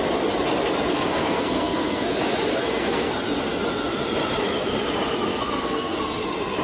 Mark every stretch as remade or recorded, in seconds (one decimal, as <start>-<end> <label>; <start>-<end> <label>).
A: 0.0-0.9 recorded; 0.9-2.1 remade; 2.1-2.5 recorded; 2.5-3.1 remade; 3.1-5.3 recorded; 5.3-6.0 remade; 6.0-6.6 recorded